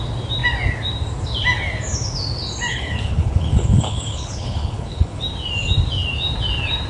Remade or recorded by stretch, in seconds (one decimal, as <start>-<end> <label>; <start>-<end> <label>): 0.0-2.7 recorded; 2.7-5.2 remade; 5.2-6.9 recorded

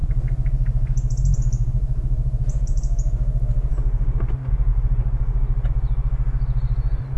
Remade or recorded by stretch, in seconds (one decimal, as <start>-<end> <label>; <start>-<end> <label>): 0.0-4.3 remade; 4.3-4.7 recorded; 4.7-5.7 remade; 5.7-7.2 recorded

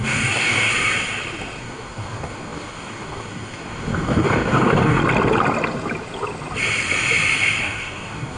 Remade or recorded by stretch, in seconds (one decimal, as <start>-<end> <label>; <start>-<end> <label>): 0.0-0.7 remade; 0.7-1.6 recorded; 1.6-5.0 remade; 5.0-7.6 recorded; 7.6-8.4 remade

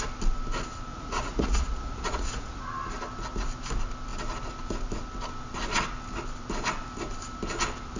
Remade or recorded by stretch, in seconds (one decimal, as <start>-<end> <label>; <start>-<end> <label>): 0.0-0.9 recorded; 0.9-2.6 remade; 2.6-8.0 recorded